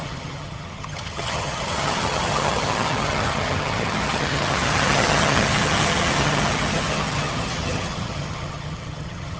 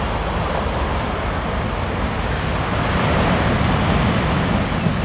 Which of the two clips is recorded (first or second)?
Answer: second